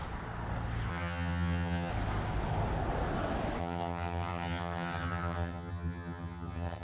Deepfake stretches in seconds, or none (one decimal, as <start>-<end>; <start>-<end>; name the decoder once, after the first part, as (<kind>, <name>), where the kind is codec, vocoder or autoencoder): 0.9-1.9 (vocoder, HiFi-GAN); 3.6-6.8